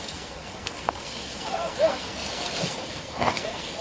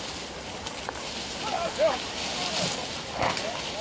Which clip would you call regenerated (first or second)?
first